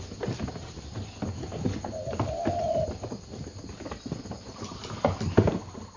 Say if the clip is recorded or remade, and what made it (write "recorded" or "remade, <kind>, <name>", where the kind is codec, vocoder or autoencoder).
recorded